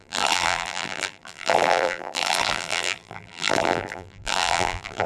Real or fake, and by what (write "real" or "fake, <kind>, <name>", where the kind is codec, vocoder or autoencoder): fake, vocoder, BigVGAN v2